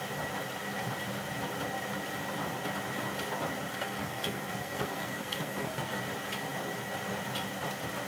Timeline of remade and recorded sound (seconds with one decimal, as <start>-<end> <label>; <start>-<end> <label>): 0.0-3.7 recorded; 3.7-6.0 remade; 6.0-8.1 recorded